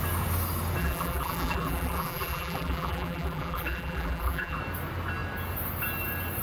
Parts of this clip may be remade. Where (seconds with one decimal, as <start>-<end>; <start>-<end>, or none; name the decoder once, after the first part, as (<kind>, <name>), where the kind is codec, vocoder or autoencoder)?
0.8-4.6 (vocoder, BigVGAN v2)